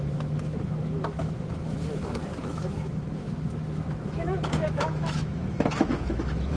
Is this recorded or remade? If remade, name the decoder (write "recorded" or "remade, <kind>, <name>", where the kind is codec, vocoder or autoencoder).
remade, autoencoder, DAC-VAE